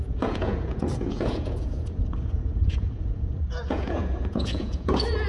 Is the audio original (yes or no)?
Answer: no